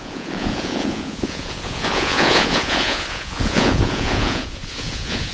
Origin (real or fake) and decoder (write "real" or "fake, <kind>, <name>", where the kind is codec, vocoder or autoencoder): fake, vocoder, Vocos